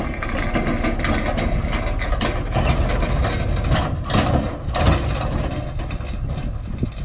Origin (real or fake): real